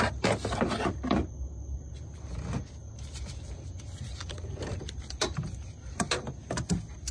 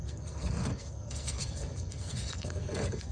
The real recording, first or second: first